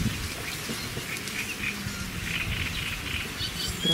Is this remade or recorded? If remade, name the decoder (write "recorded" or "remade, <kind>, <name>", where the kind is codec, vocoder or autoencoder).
recorded